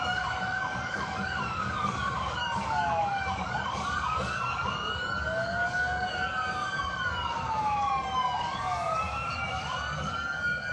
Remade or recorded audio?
remade